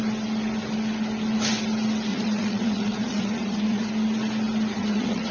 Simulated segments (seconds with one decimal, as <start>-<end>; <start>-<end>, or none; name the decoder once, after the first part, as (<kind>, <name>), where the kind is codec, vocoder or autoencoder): 2.1-3.9 (vocoder, Vocos); 4.7-5.3